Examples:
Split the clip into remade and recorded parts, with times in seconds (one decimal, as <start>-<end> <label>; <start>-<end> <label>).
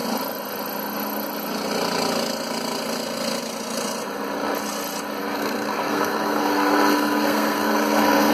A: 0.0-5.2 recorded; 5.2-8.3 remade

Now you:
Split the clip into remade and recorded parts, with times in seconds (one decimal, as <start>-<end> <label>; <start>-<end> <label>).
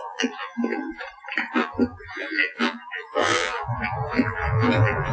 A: 0.0-1.0 remade; 1.0-1.5 recorded; 1.5-5.1 remade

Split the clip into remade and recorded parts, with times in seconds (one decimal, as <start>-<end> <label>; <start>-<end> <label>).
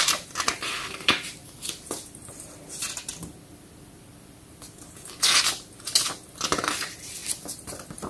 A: 0.0-1.4 remade; 1.4-6.3 recorded; 6.3-7.2 remade; 7.2-8.1 recorded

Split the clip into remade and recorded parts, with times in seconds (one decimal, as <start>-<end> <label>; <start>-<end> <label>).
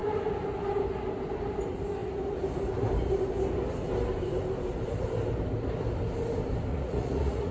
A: 0.0-6.7 recorded; 6.7-7.5 remade